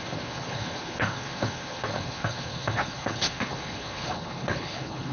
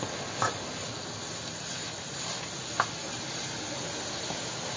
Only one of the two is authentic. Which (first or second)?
second